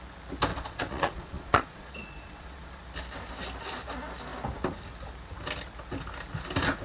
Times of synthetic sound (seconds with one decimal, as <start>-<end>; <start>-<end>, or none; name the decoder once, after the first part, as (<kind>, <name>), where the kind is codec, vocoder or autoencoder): 0.5-2.8 (vocoder, Vocos)